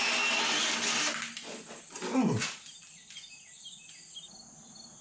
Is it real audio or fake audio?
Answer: real